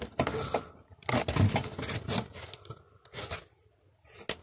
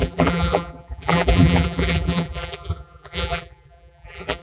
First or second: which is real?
first